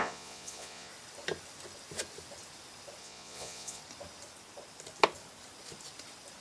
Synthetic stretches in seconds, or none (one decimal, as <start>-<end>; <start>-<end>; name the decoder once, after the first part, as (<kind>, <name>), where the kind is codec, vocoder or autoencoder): 0.0-0.9 (vocoder, Vocos); 3.0-3.8